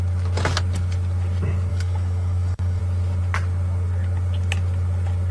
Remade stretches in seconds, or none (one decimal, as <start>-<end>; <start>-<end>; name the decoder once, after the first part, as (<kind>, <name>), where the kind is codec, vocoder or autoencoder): 1.7-2.8 (codec, DAC)